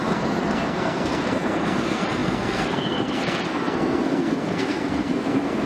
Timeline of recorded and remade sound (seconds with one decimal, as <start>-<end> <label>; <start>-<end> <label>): 0.0-5.7 remade